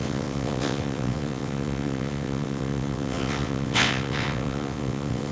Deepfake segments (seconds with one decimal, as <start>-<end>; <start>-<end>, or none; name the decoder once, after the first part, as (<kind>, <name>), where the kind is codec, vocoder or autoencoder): 0.0-5.3 (vocoder, WaveNeXt)